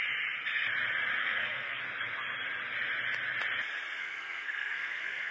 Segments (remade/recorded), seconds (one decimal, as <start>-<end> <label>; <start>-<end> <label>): 0.0-1.2 recorded; 1.2-1.8 remade; 1.8-4.0 recorded; 4.0-5.3 remade